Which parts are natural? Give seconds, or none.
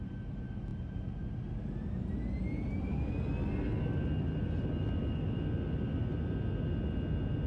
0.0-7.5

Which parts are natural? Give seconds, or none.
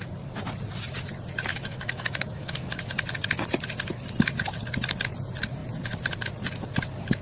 0.0-1.5; 2.7-7.2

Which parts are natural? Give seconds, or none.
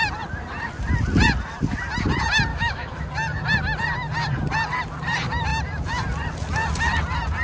0.0-2.5; 3.1-7.4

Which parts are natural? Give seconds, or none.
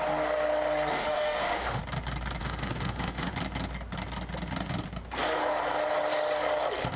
0.0-0.9; 1.8-2.4; 3.3-7.0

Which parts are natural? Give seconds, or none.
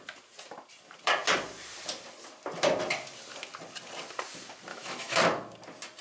0.0-4.7; 5.2-6.0